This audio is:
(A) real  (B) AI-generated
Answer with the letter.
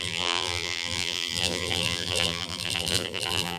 B